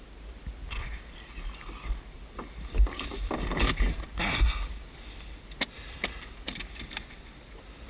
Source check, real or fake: real